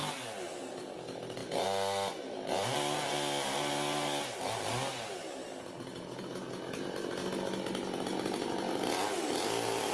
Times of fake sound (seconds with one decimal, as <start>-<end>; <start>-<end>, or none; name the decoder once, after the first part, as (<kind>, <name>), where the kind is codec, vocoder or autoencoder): none